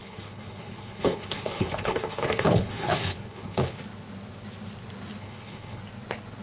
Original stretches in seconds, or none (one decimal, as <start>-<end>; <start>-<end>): 3.8-5.2; 5.8-6.4